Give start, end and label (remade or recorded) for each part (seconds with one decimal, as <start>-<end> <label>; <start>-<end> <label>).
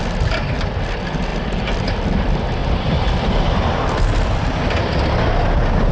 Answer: 0.0-1.3 recorded; 1.3-1.9 remade; 1.9-2.6 recorded; 2.6-5.3 remade; 5.3-5.9 recorded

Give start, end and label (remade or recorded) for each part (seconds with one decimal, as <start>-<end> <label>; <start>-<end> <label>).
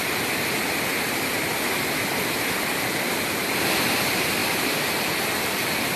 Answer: 0.0-4.4 remade; 4.4-5.0 recorded; 5.0-6.0 remade